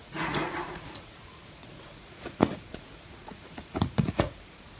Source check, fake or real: fake